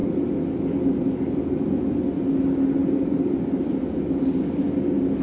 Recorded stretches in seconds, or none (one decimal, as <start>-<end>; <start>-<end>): 0.0-5.2